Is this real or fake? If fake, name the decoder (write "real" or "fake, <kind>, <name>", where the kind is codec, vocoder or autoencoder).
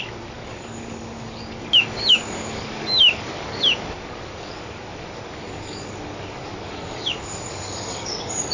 fake, codec, DAC